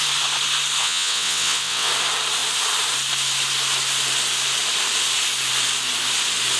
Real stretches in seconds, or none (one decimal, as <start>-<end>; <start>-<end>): 0.0-0.8; 1.9-6.6